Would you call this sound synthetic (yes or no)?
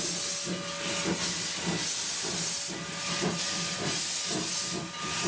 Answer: no